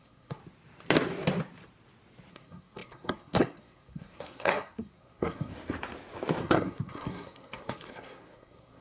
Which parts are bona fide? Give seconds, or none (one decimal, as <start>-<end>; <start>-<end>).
0.4-2.3; 5.5-6.4